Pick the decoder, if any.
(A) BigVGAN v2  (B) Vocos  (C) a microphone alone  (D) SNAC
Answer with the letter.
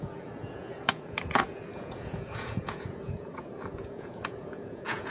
B